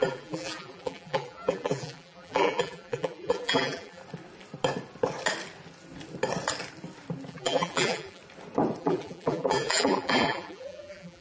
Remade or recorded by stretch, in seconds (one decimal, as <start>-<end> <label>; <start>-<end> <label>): 0.0-4.0 remade; 4.0-7.3 recorded; 7.3-8.2 remade; 8.2-8.8 recorded; 8.8-11.2 remade

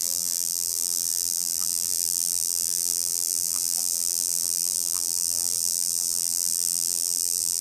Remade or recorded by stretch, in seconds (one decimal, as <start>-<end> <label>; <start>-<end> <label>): 0.0-7.6 remade

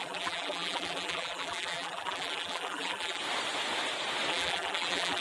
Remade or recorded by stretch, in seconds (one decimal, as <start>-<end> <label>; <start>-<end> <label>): 0.0-3.2 remade; 3.2-4.3 recorded; 4.3-5.2 remade

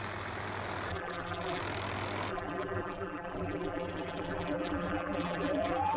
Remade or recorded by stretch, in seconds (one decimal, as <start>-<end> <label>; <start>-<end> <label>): 0.0-0.9 recorded; 0.9-1.6 remade; 1.6-2.3 recorded; 2.3-6.0 remade

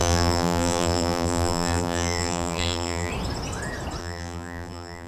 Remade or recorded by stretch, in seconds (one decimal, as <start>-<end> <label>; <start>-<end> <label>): 0.0-3.1 remade; 3.1-4.0 recorded; 4.0-5.1 remade

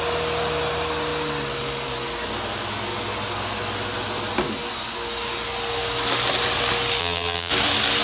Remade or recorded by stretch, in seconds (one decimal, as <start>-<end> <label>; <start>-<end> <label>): 0.0-7.0 recorded; 7.0-7.5 remade; 7.5-8.0 recorded